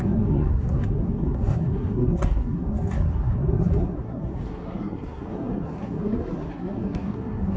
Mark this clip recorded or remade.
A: remade